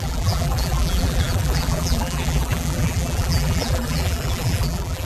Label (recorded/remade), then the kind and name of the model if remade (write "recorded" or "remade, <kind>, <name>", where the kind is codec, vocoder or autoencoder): remade, vocoder, BigVGAN v2